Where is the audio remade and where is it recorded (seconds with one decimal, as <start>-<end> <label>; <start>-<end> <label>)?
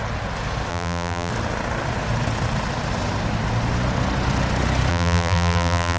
0.0-0.7 recorded; 0.7-1.3 remade; 1.3-4.9 recorded; 4.9-6.0 remade